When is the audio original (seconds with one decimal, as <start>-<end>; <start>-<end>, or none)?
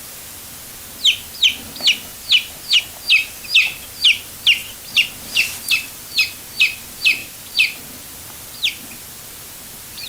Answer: 0.0-2.1; 2.8-7.2; 7.8-10.1